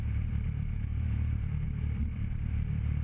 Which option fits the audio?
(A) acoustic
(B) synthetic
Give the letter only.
B